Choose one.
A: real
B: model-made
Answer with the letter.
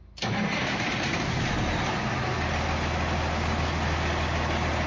A